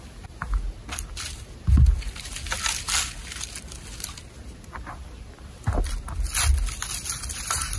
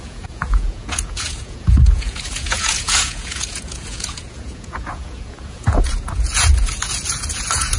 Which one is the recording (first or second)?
first